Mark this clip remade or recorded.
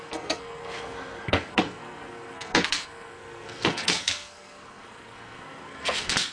remade